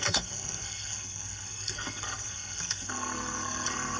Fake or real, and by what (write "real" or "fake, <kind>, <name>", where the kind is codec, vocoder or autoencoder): fake, codec, SNAC